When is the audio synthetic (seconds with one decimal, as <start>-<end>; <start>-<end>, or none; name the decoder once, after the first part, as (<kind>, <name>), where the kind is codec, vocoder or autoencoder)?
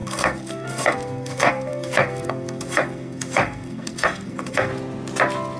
0.0-4.7 (codec, SNAC)